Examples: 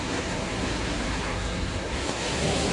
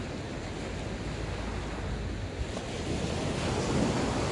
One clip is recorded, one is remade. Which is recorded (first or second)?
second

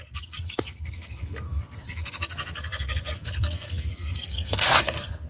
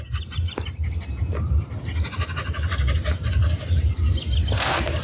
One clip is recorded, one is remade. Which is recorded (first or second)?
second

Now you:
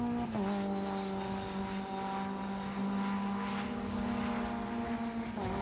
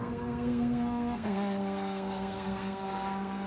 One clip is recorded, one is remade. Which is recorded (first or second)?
first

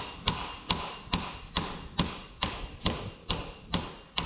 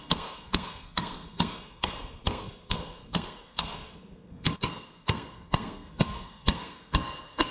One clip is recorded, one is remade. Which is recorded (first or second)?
first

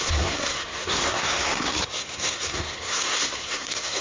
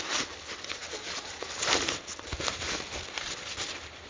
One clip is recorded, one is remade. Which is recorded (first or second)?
second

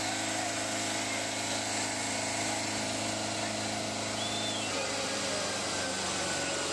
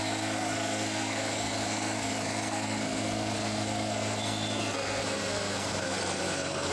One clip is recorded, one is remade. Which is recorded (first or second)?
first